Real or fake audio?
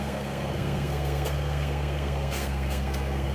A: fake